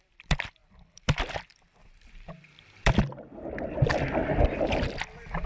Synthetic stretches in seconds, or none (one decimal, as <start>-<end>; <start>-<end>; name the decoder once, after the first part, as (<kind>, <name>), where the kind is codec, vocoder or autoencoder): 0.0-4.2 (vocoder, BigVGAN v2)